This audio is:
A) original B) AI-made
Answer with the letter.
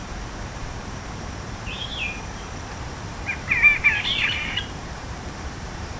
B